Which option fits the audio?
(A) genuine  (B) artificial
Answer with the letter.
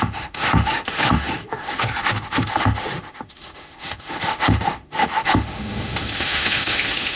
B